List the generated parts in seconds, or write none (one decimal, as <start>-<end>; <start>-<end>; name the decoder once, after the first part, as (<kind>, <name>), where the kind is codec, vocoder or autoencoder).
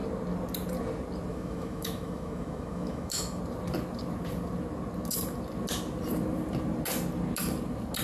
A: 1.3-3.4 (autoencoder, DAC-VAE)